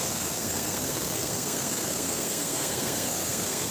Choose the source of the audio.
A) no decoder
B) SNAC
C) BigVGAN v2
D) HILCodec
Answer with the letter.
B